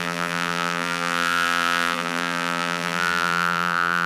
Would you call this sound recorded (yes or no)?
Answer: no